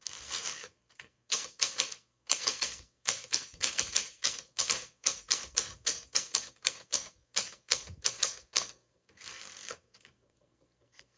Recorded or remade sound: remade